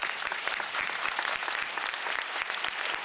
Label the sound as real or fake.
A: fake